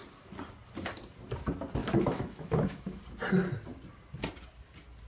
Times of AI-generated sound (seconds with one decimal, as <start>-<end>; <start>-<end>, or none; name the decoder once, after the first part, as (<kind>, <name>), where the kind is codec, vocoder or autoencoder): 1.8-3.0 (autoencoder, DAC-VAE)